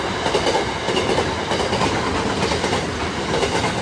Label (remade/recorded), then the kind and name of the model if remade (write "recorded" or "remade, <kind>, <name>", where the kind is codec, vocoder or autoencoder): recorded